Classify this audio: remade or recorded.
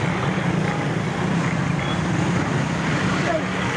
recorded